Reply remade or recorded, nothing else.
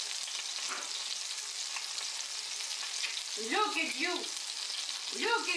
recorded